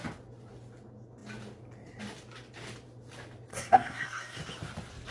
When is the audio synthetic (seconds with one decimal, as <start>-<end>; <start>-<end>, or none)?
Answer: 3.5-4.4